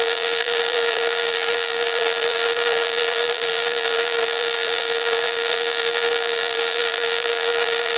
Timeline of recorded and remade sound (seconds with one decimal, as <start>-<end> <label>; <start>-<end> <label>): 0.0-8.0 remade